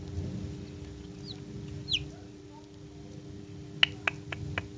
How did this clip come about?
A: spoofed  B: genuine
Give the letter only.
B